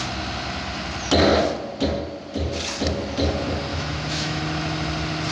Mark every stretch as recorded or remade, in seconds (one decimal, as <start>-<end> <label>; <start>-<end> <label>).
0.0-3.7 recorded; 3.7-4.4 remade; 4.4-5.3 recorded